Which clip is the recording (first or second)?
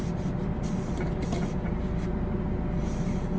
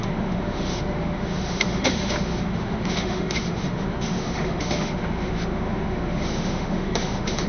first